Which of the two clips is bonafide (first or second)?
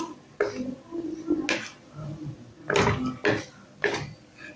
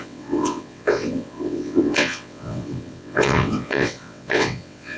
first